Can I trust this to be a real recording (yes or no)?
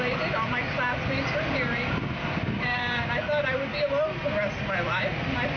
yes